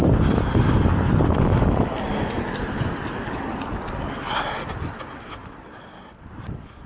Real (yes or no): yes